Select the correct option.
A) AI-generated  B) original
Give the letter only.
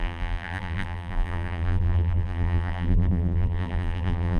A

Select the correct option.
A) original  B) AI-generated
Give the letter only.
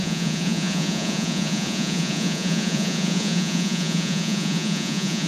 B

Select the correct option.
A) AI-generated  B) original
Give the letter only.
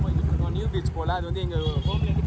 B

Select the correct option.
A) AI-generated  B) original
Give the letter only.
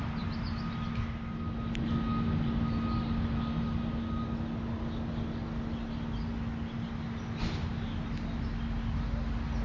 B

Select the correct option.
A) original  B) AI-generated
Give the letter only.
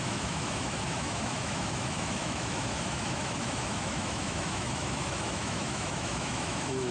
B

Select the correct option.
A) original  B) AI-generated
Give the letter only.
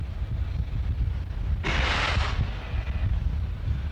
A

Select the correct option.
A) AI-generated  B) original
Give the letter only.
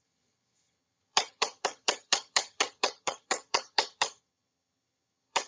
A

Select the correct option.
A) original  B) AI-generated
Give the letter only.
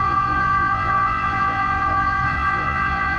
B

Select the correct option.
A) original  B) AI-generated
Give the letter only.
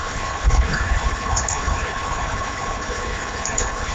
B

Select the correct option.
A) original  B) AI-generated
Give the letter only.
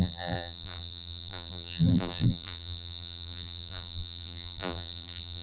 B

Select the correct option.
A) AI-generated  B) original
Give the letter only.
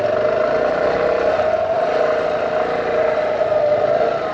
B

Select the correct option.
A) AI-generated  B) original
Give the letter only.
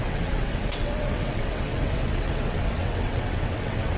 A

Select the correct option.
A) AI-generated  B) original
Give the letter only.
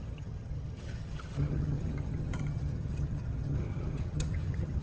A